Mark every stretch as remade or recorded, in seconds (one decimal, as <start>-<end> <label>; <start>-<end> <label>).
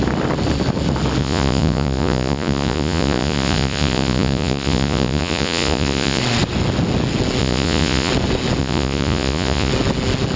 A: 0.0-1.2 recorded; 1.2-6.2 remade; 6.2-7.4 recorded; 7.4-8.1 remade; 8.1-8.6 recorded; 8.6-9.7 remade; 9.7-10.4 recorded